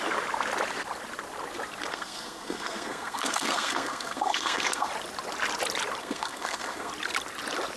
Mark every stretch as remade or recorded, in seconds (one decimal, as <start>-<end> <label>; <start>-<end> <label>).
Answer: 0.0-1.9 recorded; 1.9-4.9 remade; 4.9-6.0 recorded; 6.0-6.9 remade; 6.9-7.8 recorded